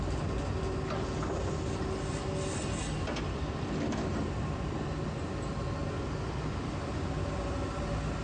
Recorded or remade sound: recorded